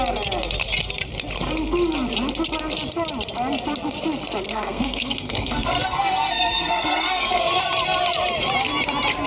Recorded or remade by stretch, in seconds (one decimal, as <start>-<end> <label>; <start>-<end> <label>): 0.0-4.5 recorded; 4.5-7.6 remade; 7.6-9.3 recorded